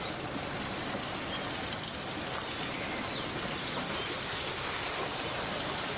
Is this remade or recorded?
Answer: recorded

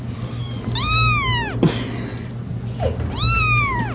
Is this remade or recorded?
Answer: recorded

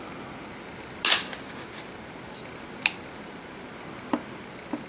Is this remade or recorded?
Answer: recorded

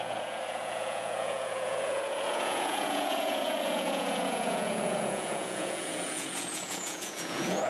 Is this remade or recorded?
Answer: remade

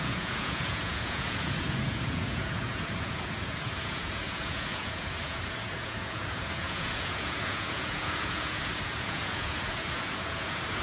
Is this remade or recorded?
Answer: remade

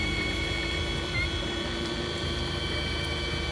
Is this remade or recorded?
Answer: remade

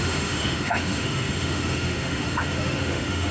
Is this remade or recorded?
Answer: remade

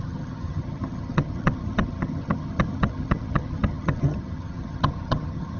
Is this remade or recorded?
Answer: remade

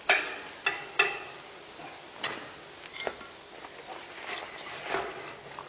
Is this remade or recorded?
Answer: recorded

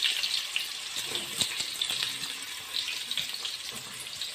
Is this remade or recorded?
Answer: recorded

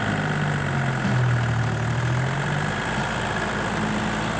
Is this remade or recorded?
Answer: recorded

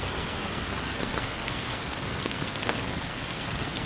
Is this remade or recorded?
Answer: remade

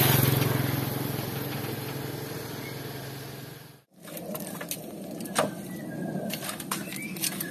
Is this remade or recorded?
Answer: recorded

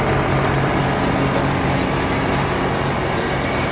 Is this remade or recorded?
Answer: recorded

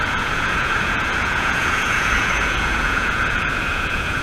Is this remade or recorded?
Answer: remade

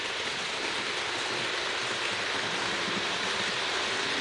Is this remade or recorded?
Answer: recorded